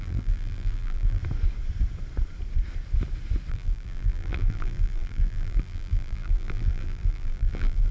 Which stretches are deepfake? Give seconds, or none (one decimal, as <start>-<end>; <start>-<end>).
0.0-1.2; 3.5-7.9

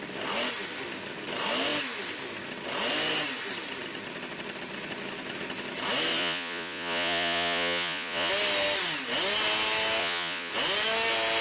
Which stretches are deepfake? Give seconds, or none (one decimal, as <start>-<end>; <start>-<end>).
6.2-8.3; 10.0-10.5

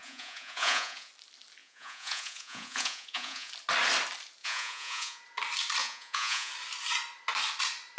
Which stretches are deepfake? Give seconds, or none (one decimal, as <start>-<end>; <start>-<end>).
0.0-1.1; 1.6-3.5; 4.4-5.2; 5.8-6.5

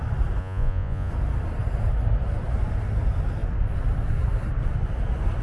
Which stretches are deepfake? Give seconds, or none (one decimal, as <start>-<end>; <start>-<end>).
0.4-1.1

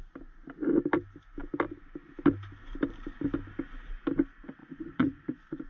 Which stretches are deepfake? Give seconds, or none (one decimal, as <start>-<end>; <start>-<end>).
4.6-5.7

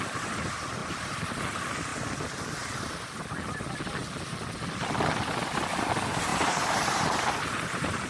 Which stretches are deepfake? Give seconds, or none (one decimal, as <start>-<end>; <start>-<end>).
0.8-1.4; 6.3-8.1

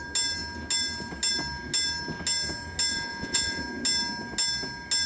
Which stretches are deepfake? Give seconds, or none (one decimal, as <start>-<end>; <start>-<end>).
2.9-3.6

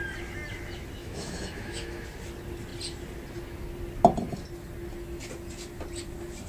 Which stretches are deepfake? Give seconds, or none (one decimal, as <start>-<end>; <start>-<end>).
1.0-2.0